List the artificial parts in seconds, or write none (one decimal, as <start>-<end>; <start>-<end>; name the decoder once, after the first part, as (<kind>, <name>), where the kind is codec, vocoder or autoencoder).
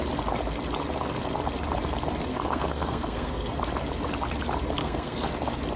2.3-3.5 (codec, SNAC); 4.8-5.3